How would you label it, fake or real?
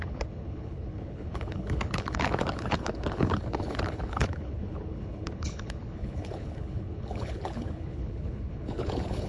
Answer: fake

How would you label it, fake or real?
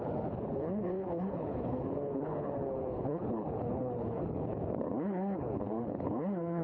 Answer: fake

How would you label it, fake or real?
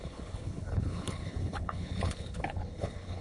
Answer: fake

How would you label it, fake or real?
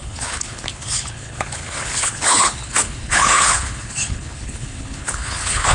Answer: fake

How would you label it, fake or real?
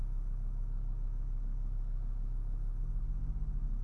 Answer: real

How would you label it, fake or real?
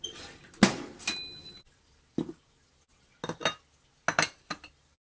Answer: real